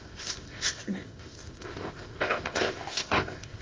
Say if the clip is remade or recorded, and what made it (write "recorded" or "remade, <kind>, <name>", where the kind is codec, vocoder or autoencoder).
remade, codec, ZipCodec